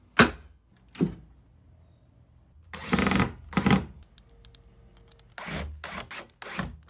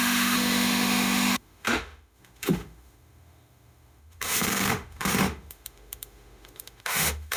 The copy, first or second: second